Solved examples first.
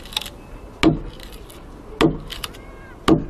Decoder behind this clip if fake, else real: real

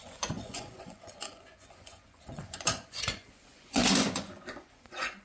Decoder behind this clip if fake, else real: fake, vocoder, Vocos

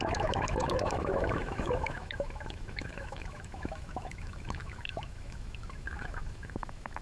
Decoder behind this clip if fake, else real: fake, autoencoder, DAC-VAE